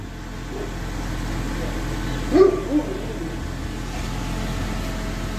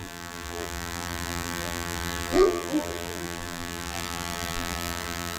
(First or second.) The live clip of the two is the first